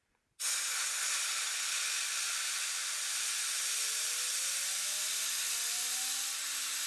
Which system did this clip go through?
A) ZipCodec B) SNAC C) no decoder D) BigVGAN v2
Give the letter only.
C